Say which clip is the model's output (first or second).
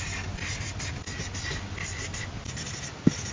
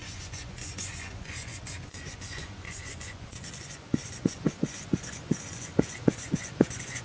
second